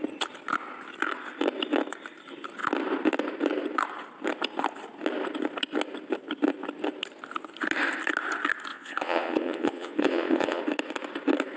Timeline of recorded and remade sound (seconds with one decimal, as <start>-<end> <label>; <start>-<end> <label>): 0.0-8.7 recorded; 8.7-10.6 remade; 10.6-11.6 recorded